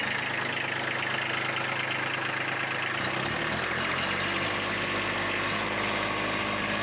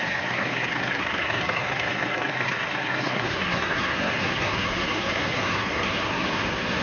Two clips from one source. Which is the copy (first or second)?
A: second